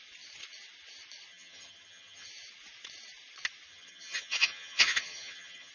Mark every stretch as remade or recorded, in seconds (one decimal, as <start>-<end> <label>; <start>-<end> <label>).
0.0-1.3 recorded; 1.3-2.3 remade; 2.3-3.7 recorded; 3.7-5.7 remade